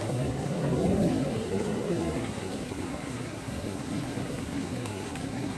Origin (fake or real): fake